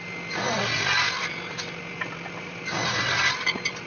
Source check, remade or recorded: recorded